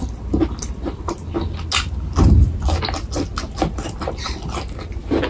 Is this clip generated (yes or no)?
no